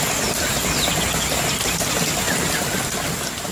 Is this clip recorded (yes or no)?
yes